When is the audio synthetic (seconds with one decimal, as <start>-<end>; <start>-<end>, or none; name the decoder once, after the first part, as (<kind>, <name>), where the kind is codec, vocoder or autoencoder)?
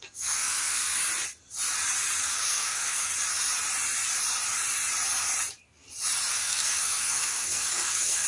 0.0-1.0 (codec, SNAC); 2.2-3.1; 6.3-8.3